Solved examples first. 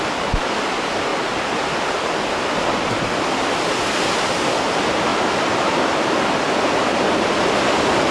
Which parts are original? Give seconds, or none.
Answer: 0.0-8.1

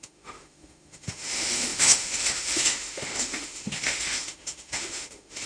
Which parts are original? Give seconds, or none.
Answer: none

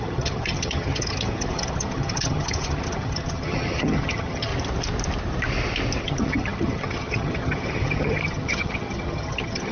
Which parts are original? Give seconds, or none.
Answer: 4.5-6.0

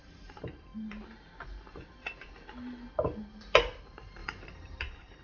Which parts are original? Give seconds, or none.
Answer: 0.7-3.8

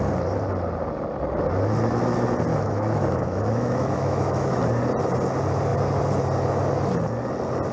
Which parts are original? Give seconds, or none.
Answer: 0.0-2.5; 4.6-7.7